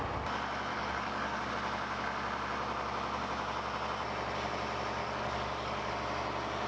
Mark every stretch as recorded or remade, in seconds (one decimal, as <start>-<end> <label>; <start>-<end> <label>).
0.0-0.7 recorded; 0.7-1.5 remade; 1.5-5.0 recorded; 5.0-5.9 remade; 5.9-6.7 recorded